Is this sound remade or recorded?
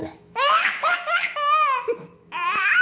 remade